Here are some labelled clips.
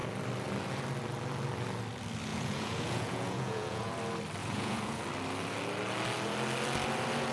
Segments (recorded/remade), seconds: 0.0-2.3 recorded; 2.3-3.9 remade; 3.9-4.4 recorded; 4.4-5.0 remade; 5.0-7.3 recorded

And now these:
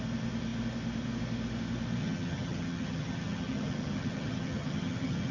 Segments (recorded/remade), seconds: 0.0-2.0 recorded; 2.0-5.3 remade

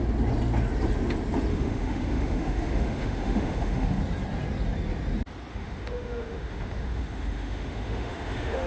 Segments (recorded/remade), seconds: 0.0-1.5 recorded; 1.5-4.0 remade; 4.0-5.5 recorded; 5.5-8.7 remade

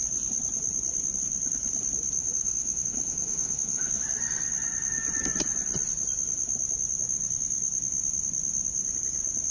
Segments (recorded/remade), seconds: 0.0-2.2 recorded; 2.2-4.0 remade; 4.0-9.5 recorded